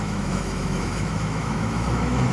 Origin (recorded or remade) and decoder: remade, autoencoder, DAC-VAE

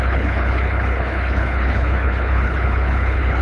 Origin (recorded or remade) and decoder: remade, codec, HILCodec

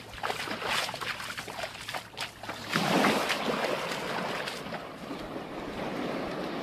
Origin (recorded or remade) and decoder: recorded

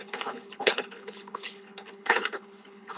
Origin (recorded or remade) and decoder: remade, codec, HILCodec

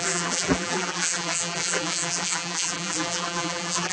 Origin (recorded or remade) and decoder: remade, vocoder, BigVGAN v2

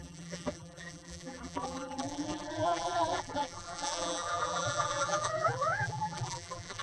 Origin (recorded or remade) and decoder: remade, vocoder, BigVGAN v2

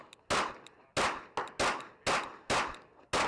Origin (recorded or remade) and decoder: recorded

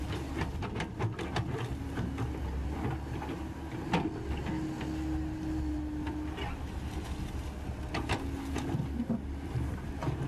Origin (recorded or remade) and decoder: recorded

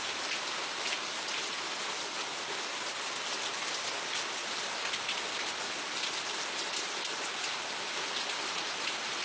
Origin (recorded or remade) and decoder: recorded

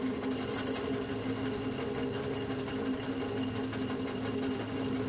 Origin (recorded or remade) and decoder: recorded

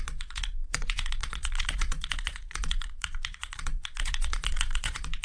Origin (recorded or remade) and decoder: remade, vocoder, Vocos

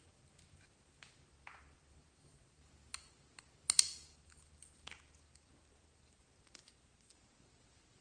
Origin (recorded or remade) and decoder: recorded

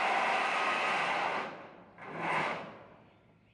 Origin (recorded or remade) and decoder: recorded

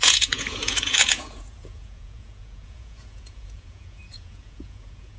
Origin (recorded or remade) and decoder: remade, vocoder, Vocos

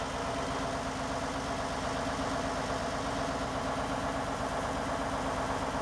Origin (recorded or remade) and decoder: recorded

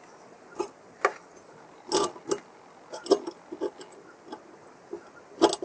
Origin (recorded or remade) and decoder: recorded